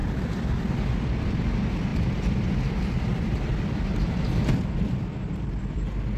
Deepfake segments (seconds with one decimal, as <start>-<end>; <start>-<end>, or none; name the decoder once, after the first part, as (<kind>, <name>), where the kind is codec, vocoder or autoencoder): 1.9-5.6 (vocoder, BigVGAN v2)